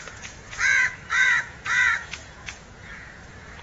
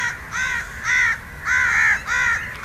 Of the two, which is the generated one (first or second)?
first